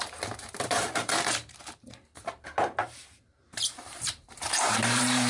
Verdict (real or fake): fake